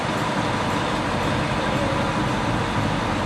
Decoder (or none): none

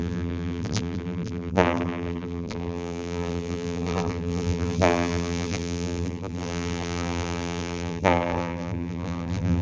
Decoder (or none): vocoder, BigVGAN v2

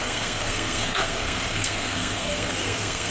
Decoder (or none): codec, SNAC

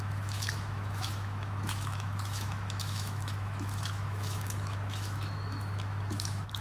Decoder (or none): autoencoder, DAC-VAE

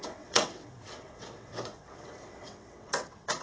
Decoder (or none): vocoder, WaveNeXt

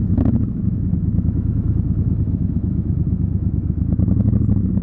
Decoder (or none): autoencoder, DAC-VAE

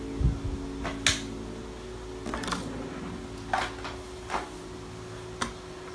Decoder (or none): none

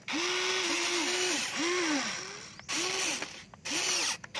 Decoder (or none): none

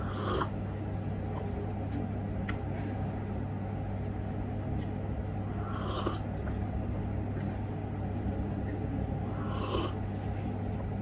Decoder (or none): none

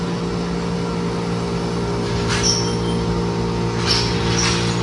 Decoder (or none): none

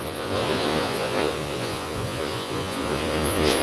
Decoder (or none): vocoder, Vocos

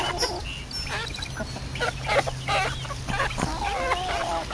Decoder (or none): none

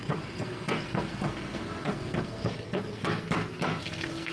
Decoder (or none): codec, SNAC